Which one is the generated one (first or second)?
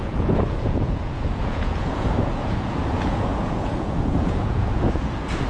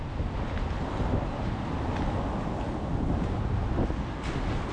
first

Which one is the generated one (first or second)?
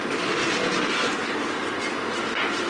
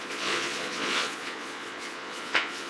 second